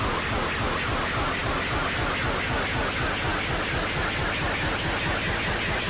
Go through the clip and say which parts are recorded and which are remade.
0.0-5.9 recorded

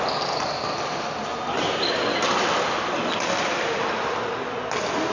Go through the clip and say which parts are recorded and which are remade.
0.0-5.1 recorded